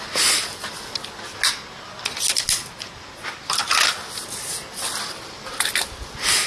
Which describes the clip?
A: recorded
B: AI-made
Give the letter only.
A